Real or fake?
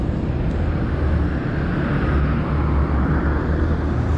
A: real